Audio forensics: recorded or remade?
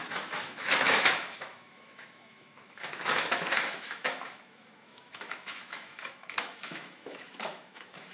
remade